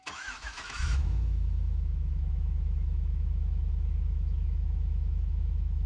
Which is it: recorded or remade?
remade